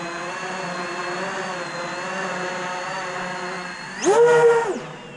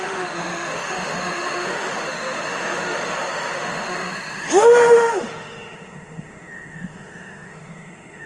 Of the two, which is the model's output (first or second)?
second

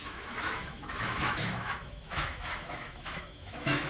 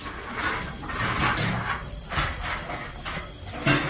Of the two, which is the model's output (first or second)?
first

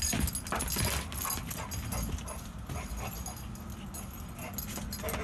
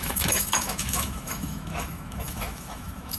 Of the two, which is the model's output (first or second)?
second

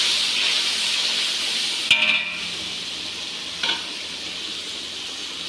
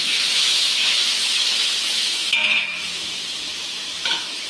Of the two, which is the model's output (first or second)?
second